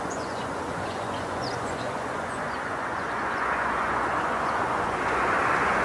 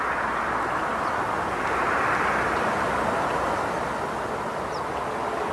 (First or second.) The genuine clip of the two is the second